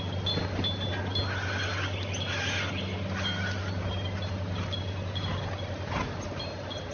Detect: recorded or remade recorded